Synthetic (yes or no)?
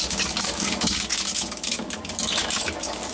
yes